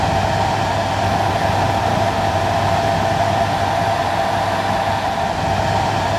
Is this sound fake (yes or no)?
no